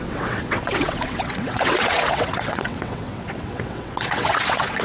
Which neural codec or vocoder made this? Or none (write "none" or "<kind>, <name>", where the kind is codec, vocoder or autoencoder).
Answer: vocoder, WaveNeXt